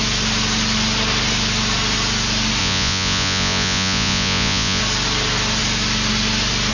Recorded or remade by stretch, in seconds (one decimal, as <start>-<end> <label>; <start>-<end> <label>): 0.0-2.6 recorded; 2.6-4.8 remade; 4.8-6.7 recorded